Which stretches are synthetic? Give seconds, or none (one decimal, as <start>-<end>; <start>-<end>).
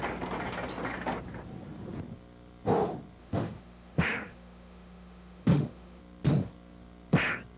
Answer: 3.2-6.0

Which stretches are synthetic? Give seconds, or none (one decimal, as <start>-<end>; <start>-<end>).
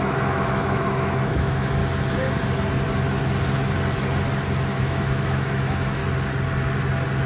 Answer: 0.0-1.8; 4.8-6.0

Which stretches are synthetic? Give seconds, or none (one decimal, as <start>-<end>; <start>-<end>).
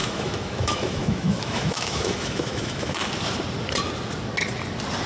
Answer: 0.0-3.1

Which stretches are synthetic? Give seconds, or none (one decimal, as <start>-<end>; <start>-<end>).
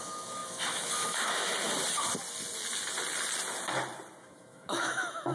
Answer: 0.0-1.5; 4.2-5.3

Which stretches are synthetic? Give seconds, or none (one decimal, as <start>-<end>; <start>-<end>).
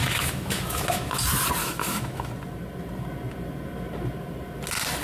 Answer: 0.0-1.1; 1.6-2.3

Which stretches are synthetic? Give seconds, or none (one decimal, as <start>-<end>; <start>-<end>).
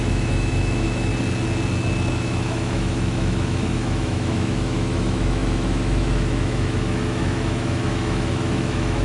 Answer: 0.0-1.1; 2.1-9.0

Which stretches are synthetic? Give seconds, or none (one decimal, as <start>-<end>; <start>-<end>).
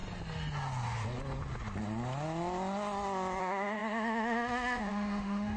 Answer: 3.4-5.6